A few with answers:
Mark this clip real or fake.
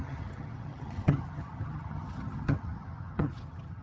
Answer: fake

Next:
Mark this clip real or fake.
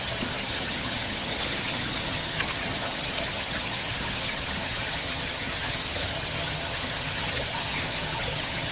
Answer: fake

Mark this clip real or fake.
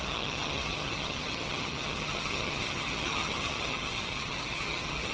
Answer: fake